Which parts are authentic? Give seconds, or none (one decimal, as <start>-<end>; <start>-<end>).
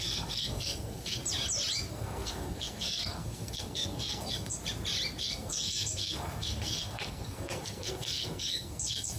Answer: 1.2-1.9; 4.6-5.2